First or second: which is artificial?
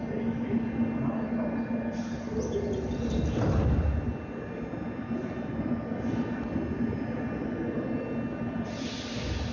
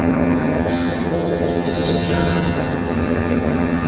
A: second